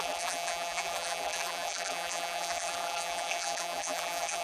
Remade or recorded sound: remade